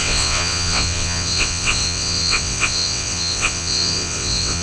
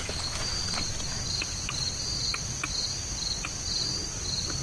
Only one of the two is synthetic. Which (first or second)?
first